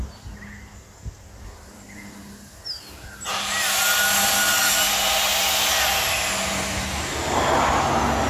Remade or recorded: recorded